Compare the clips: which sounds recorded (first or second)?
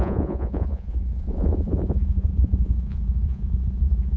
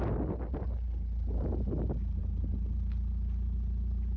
second